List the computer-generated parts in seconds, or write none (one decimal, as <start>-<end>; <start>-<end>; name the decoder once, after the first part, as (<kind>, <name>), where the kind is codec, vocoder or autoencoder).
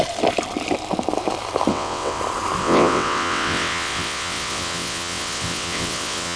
1.7-2.2 (vocoder, WaveNeXt); 2.6-6.4